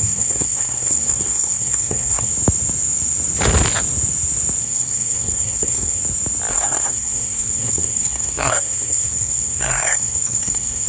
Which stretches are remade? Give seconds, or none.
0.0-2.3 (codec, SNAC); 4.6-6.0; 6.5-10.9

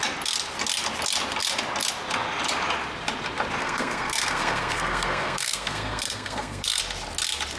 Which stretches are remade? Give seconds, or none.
3.6-6.8 (codec, SNAC)

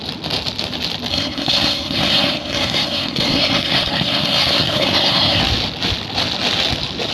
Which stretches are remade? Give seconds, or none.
1.1-5.4 (codec, SNAC)

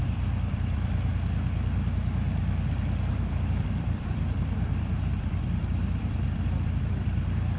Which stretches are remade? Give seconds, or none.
0.0-1.1 (vocoder, BigVGAN v2); 3.1-7.6

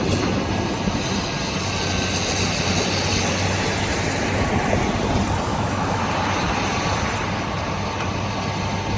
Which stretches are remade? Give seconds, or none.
5.5-6.0 (autoencoder, DAC-VAE)

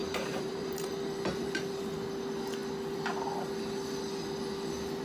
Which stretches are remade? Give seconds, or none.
0.0-0.9 (vocoder, BigVGAN v2)

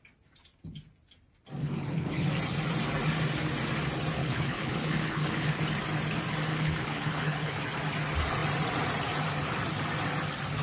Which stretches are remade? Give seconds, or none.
1.6-2.3 (codec, HILCodec); 4.2-5.6; 6.5-7.6

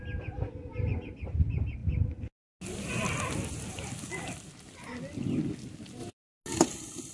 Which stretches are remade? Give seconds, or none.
none